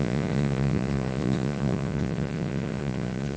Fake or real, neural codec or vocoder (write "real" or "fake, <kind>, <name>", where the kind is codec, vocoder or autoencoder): fake, vocoder, Vocos